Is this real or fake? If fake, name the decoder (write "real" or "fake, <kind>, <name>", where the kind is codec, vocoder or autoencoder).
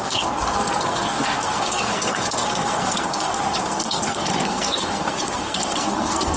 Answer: fake, codec, SNAC